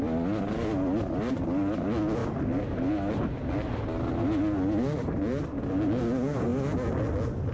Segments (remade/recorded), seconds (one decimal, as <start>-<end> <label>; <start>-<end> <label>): 0.0-7.5 recorded